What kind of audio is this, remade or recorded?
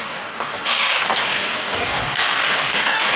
remade